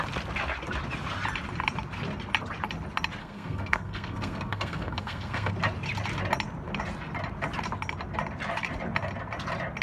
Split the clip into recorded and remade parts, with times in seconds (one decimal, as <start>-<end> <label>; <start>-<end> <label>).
0.0-3.2 recorded; 3.2-5.5 remade; 5.5-9.8 recorded